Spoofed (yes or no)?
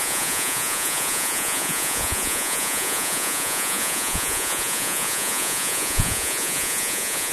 yes